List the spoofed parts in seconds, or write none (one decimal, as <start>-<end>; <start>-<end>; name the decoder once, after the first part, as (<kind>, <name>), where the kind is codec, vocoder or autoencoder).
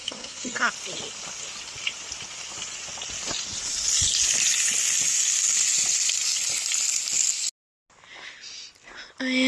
0.0-0.7 (codec, SNAC)